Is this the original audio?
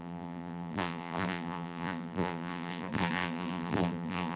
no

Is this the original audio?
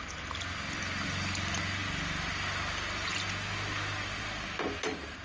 yes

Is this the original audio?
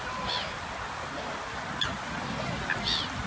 yes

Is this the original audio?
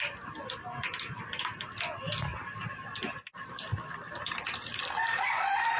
no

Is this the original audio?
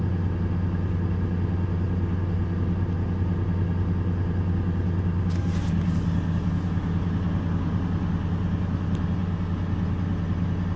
yes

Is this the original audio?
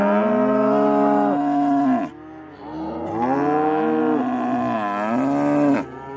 yes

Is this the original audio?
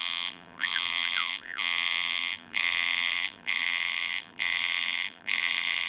no